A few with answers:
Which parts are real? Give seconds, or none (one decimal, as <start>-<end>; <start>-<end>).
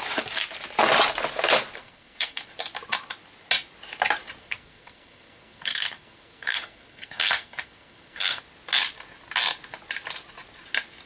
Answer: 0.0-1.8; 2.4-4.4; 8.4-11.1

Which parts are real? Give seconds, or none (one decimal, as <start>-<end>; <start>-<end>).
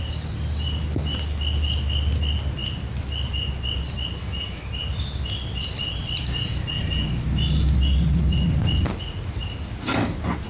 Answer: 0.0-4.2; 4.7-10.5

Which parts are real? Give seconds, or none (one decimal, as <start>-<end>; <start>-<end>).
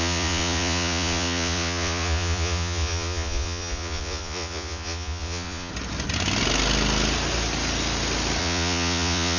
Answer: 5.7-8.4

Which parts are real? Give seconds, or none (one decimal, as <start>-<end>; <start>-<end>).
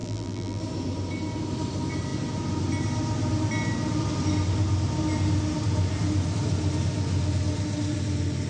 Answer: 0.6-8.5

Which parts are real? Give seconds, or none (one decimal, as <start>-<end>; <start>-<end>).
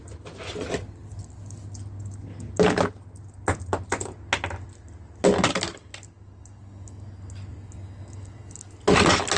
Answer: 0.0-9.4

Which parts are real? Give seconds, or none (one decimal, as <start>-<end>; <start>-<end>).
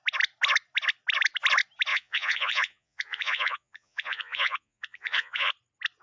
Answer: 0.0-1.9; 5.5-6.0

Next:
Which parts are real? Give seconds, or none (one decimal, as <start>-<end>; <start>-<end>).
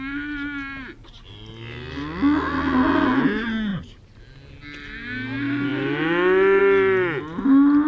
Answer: 0.0-3.7; 4.2-7.9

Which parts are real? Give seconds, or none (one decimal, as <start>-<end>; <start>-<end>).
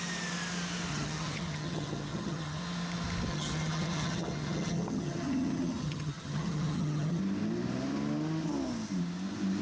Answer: 0.0-0.9; 2.6-3.3; 7.2-9.6